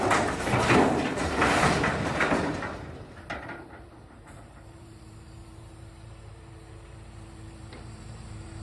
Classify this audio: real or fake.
fake